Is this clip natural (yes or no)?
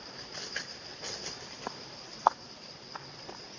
no